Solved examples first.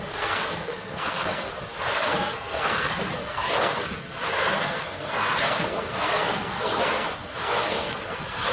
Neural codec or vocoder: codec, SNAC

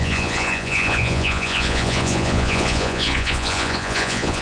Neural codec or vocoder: vocoder, Vocos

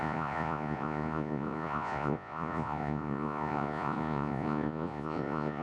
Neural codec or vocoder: vocoder, Vocos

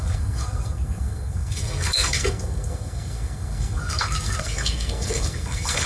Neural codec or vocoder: codec, SNAC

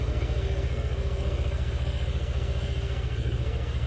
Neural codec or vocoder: codec, SNAC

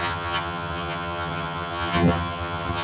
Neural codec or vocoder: vocoder, HiFi-GAN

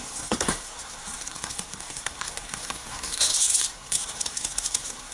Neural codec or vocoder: codec, SNAC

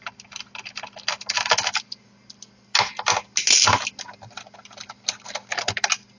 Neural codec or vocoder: none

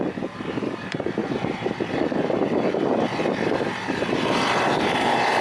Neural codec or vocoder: vocoder, BigVGAN v2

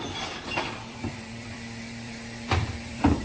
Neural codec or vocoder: vocoder, BigVGAN v2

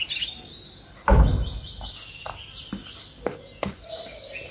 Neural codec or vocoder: none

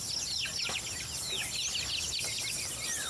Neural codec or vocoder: none